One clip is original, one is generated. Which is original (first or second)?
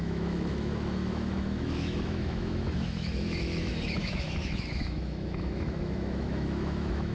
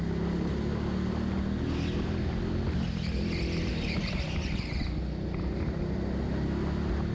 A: second